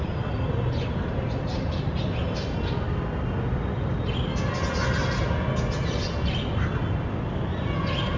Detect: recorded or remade recorded